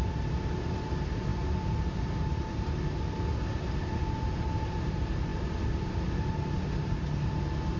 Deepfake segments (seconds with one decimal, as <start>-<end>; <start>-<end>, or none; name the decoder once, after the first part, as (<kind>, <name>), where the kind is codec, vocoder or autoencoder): none